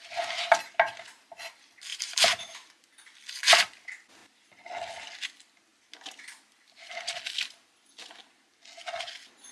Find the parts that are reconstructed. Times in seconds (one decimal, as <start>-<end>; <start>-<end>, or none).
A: 1.9-2.7